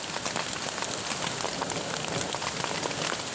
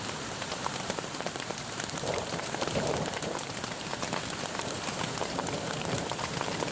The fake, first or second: second